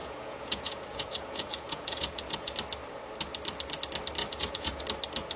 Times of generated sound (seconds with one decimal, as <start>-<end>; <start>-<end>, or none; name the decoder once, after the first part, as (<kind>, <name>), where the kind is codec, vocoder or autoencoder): 0.0-2.5 (vocoder, Vocos); 4.2-4.8